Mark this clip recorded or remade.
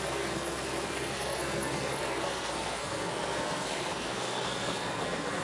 remade